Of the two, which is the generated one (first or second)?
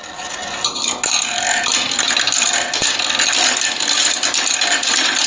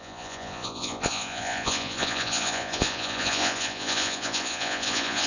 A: second